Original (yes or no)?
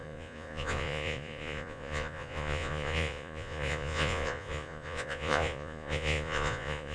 no